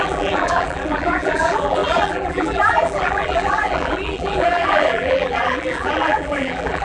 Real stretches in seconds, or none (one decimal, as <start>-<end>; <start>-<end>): none